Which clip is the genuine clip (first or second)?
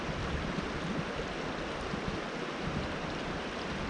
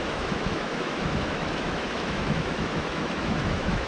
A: first